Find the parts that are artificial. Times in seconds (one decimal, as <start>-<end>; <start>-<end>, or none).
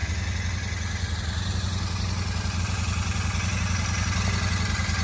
none